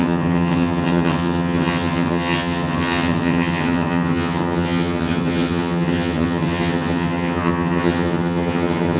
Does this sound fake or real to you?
fake